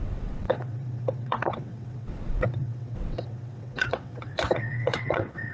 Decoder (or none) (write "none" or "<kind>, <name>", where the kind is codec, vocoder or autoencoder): vocoder, WaveNeXt